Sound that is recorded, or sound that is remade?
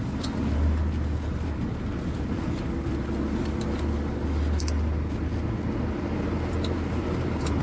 recorded